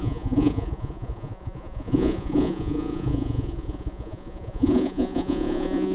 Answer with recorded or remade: remade